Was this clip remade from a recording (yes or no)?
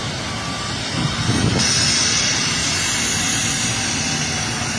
no